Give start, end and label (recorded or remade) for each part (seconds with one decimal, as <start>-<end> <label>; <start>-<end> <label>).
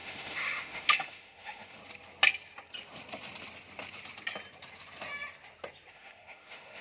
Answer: 0.0-1.8 remade; 1.8-5.9 recorded; 5.9-6.8 remade